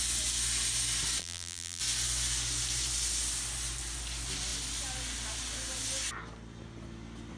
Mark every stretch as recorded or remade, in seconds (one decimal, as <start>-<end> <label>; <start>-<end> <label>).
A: 0.0-1.2 recorded; 1.2-1.8 remade; 1.8-7.4 recorded